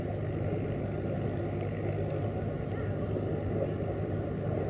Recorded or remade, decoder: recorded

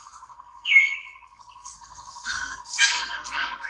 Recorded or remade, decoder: remade, codec, SNAC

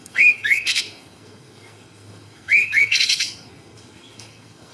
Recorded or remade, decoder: remade, codec, SNAC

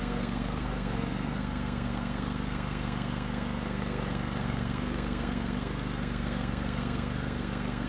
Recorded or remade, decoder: remade, codec, SNAC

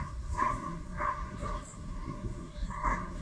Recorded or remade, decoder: remade, codec, SNAC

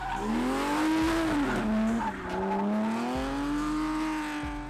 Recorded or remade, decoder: recorded